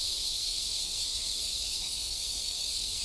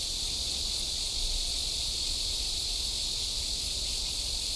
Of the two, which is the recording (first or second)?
second